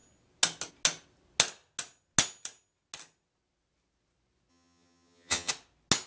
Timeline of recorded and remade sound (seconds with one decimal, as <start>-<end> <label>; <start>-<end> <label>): 0.0-4.5 recorded; 4.5-5.5 remade; 5.5-6.1 recorded